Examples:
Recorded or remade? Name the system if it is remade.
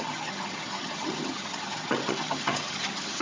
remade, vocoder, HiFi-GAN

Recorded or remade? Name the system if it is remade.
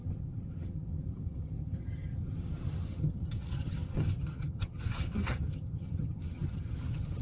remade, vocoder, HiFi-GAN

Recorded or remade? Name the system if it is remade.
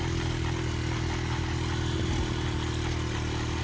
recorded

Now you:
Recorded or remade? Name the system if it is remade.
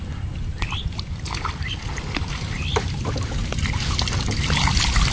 recorded